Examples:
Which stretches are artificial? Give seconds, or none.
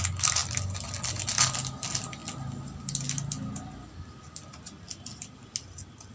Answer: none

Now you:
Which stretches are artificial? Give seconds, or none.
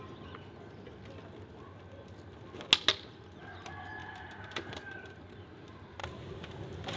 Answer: 4.0-5.4 (vocoder, BigVGAN v2); 6.0-6.5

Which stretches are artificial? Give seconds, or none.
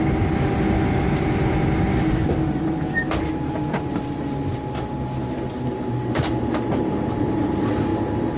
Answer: none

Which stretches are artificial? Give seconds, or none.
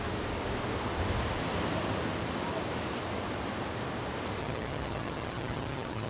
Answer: 4.4-6.1 (vocoder, HiFi-GAN)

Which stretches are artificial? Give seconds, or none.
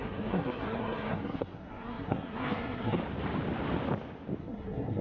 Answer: 0.0-3.0 (codec, SNAC); 4.4-5.0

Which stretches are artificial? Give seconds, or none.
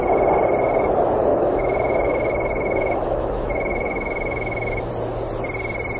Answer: 1.3-4.9 (autoencoder, DAC-VAE)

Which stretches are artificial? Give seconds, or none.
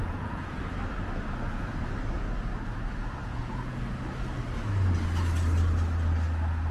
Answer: 0.0-0.6 (vocoder, Vocos); 3.2-3.8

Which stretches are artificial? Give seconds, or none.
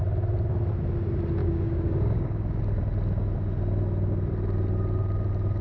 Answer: 1.4-2.6 (codec, DAC)